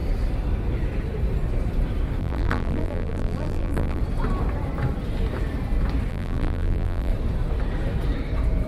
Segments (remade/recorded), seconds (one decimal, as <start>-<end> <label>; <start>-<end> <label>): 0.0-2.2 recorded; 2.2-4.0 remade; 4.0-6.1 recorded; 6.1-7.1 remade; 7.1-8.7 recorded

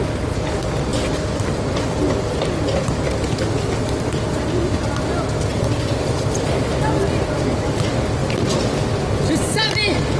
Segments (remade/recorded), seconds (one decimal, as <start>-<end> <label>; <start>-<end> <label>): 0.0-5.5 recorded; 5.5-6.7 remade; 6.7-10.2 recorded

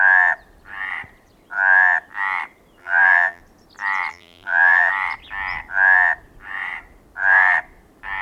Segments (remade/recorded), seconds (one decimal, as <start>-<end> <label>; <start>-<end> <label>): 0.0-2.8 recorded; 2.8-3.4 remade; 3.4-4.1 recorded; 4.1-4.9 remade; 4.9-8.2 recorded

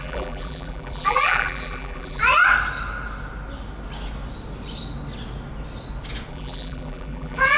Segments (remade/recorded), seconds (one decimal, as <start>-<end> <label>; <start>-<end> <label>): 0.0-2.2 remade; 2.2-6.3 recorded; 6.3-7.6 remade

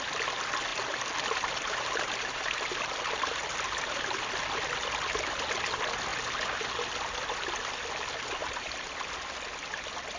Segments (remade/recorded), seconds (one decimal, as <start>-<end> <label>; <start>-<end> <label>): 0.0-0.7 recorded; 0.7-4.3 remade; 4.3-8.4 recorded; 8.4-9.1 remade; 9.1-10.2 recorded

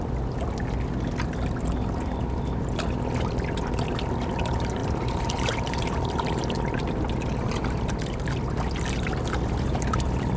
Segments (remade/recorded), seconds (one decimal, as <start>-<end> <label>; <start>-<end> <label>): 0.0-4.8 recorded; 4.8-6.4 remade; 6.4-10.4 recorded